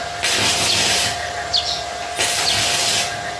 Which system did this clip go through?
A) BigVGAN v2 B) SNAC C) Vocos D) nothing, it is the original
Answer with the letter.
D